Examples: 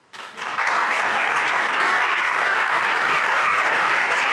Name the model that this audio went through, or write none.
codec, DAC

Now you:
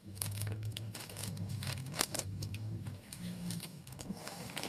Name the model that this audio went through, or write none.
codec, DAC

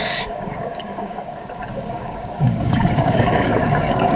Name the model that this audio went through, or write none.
codec, DAC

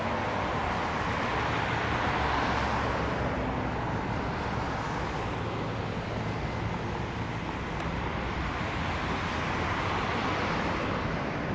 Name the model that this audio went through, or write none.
none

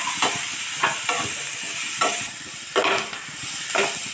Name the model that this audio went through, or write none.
none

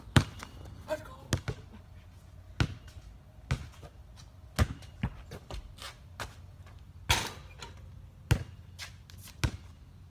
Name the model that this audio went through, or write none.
none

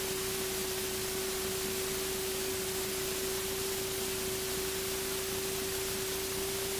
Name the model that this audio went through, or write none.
none